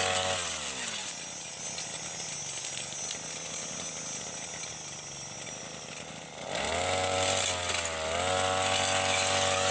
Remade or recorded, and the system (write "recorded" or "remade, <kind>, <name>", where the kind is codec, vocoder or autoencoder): recorded